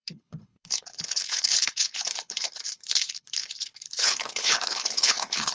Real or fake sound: fake